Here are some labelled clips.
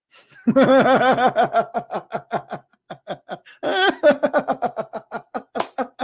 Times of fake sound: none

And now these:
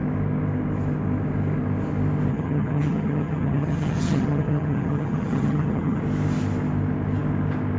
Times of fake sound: 2.3-6.0 (vocoder, HiFi-GAN)

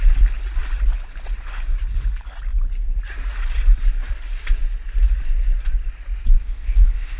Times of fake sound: 6.4-7.2 (codec, ZipCodec)

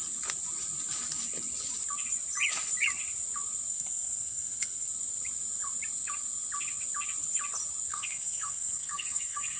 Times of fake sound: 3.7-4.9 (codec, SNAC); 7.9-9.6

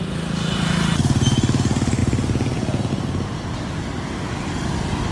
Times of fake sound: 2.0-2.9 (vocoder, Vocos)

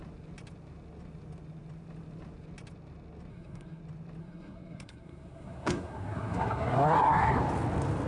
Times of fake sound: 3.3-3.8 (codec, SNAC); 4.2-7.4

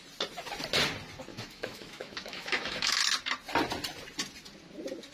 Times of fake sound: 1.3-3.0 (autoencoder, DAC-VAE)